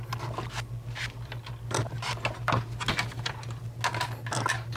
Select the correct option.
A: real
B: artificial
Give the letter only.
A